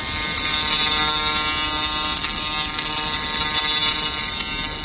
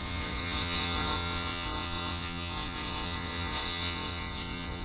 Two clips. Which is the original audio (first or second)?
first